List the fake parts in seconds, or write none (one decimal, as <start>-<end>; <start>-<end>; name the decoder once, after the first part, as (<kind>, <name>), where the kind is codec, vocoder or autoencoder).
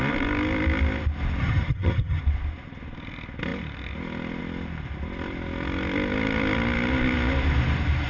1.4-2.2 (vocoder, HiFi-GAN)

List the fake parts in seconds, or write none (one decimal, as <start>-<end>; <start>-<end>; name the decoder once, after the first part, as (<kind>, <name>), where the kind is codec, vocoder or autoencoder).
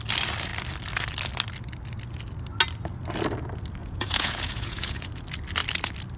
3.8-5.1 (vocoder, Vocos)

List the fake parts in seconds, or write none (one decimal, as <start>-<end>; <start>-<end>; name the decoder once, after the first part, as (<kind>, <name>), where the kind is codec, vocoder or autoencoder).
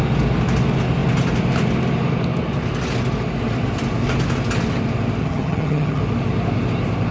5.2-6.0 (vocoder, HiFi-GAN)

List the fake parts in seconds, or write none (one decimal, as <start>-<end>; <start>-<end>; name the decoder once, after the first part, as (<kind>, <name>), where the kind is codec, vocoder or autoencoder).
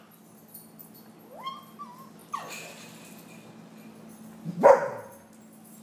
none